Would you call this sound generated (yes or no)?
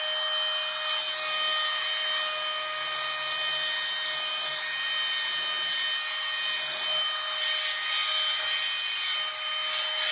no